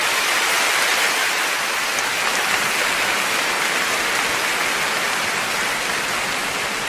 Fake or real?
real